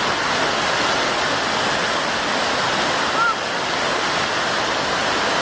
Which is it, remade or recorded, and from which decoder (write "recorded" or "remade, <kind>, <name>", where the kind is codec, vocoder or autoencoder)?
recorded